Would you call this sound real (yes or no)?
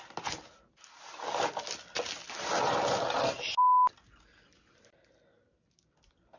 yes